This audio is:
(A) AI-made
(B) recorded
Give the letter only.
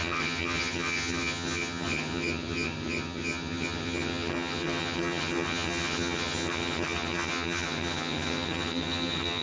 A